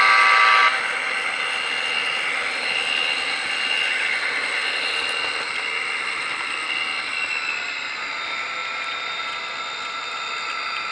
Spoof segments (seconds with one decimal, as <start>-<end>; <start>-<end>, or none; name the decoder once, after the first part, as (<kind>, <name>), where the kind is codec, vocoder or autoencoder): none